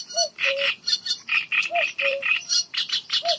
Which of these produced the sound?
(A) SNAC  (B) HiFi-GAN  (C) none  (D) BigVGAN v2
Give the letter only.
D